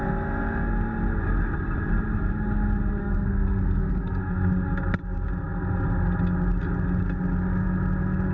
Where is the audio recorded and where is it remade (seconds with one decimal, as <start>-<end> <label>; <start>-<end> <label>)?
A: 0.0-3.0 recorded; 3.0-4.2 remade; 4.2-8.3 recorded